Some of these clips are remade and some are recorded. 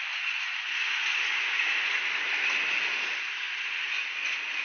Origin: recorded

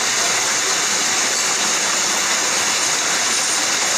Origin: recorded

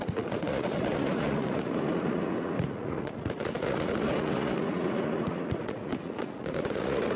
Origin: remade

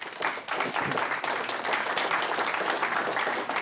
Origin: recorded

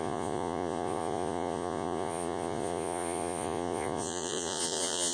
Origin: remade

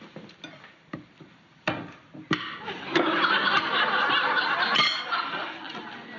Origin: recorded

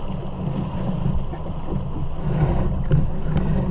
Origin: recorded